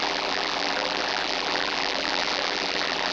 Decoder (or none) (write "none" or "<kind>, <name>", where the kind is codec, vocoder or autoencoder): vocoder, BigVGAN v2